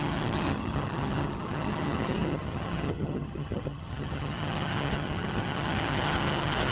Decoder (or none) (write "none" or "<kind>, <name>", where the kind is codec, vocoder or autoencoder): vocoder, HiFi-GAN